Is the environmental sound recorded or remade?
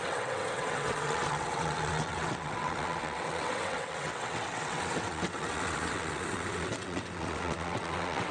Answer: remade